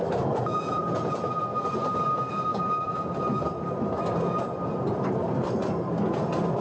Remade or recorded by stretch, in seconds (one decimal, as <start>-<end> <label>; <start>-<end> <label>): 0.0-0.5 recorded; 0.5-1.3 remade; 1.3-6.6 recorded